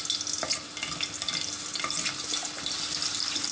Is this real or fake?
real